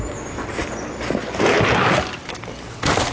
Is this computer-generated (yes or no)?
no